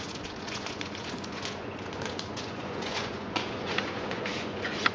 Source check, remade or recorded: remade